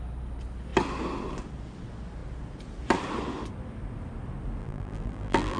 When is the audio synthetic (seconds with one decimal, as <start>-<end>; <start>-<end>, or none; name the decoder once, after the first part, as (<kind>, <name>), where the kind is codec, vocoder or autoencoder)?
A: 4.6-5.6 (vocoder, BigVGAN v2)